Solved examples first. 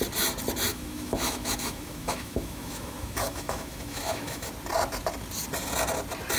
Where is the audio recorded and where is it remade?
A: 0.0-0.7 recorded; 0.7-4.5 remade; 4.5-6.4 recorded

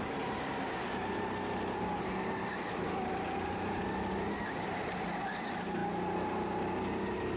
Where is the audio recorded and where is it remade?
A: 0.0-7.4 recorded

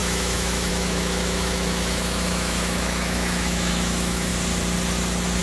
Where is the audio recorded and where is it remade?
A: 0.0-4.3 remade; 4.3-5.4 recorded

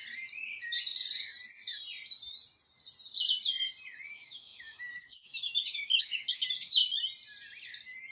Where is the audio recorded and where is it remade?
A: 0.0-4.1 recorded; 4.1-6.8 remade; 6.8-8.1 recorded

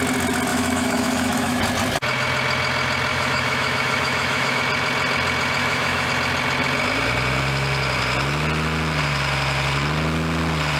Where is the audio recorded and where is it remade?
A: 0.0-0.5 recorded; 0.5-1.6 remade; 1.6-3.1 recorded; 3.1-4.6 remade; 4.6-5.6 recorded; 5.6-6.1 remade; 6.1-10.8 recorded